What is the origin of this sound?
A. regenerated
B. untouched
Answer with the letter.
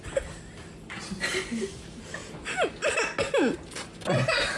B